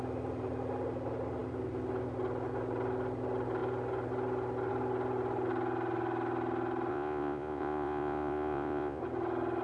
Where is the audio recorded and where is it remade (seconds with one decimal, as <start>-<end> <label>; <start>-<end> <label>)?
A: 0.0-6.9 recorded; 6.9-9.0 remade; 9.0-9.6 recorded